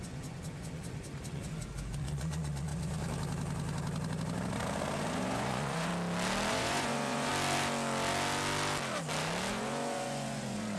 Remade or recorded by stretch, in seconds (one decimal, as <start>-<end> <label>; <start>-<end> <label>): 0.0-2.7 remade; 2.7-5.1 recorded; 5.1-5.9 remade; 5.9-6.5 recorded; 6.5-7.3 remade; 7.3-9.5 recorded; 9.5-10.8 remade